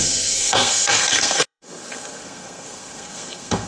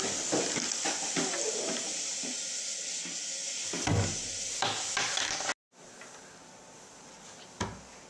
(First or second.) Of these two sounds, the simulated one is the first